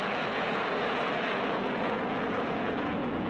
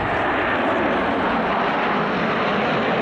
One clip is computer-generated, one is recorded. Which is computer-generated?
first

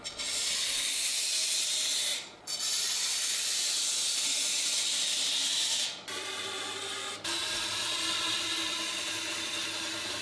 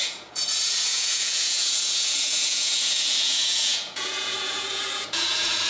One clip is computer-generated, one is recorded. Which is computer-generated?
second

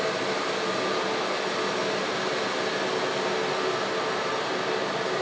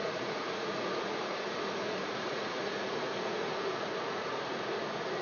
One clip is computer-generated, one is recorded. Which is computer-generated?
second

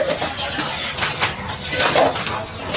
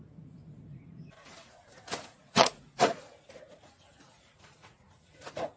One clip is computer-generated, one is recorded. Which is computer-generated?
second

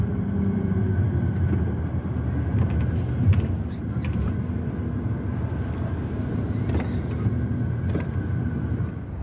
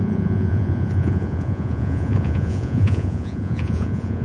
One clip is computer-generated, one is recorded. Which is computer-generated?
second